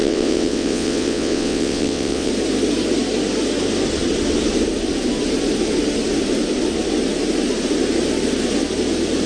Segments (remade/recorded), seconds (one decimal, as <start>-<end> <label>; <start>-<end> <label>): 0.0-2.3 remade; 2.3-9.3 recorded